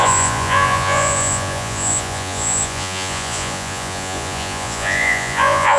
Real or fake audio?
fake